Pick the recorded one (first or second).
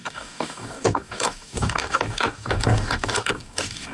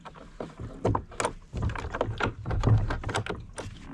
second